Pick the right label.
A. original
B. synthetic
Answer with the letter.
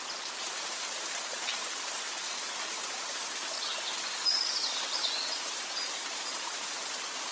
A